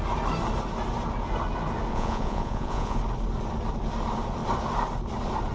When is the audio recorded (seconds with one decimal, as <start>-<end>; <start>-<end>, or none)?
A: 0.0-1.9; 3.0-5.5